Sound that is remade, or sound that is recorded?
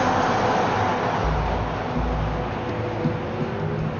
recorded